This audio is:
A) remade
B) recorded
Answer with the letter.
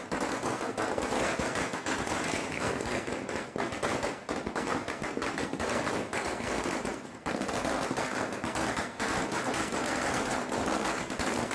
A